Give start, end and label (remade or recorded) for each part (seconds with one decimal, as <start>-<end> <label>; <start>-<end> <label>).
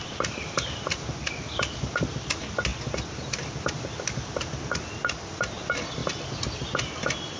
0.0-7.4 recorded